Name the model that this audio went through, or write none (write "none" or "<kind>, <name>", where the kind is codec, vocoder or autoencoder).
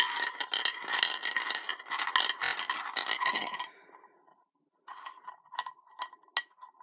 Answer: none